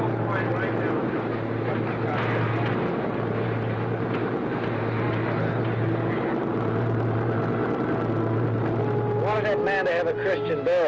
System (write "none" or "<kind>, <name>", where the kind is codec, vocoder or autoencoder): none